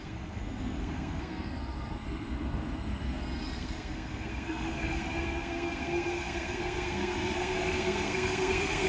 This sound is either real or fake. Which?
fake